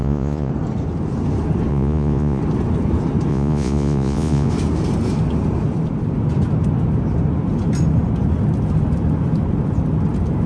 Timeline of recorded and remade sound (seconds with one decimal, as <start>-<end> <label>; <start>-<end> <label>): 0.0-0.5 remade; 0.5-1.7 recorded; 1.7-2.4 remade; 2.4-3.3 recorded; 3.3-4.5 remade; 4.5-10.5 recorded